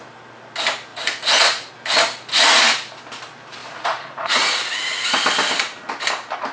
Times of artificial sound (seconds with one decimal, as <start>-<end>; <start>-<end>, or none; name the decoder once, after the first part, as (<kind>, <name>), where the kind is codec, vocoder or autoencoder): 0.9-1.7 (vocoder, Vocos); 3.6-4.6